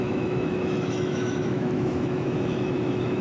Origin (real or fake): fake